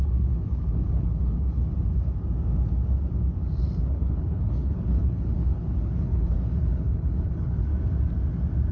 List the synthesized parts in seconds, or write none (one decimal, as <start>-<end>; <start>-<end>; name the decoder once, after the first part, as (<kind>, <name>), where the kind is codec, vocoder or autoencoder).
0.0-1.6 (codec, HILCodec); 3.8-7.7